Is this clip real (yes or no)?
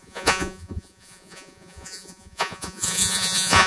no